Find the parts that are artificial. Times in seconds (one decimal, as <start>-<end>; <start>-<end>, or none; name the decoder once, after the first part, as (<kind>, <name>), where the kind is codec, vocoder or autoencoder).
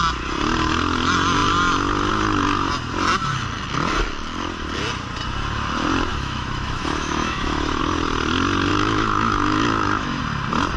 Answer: 6.1-7.8 (autoencoder, DAC-VAE); 8.7-10.2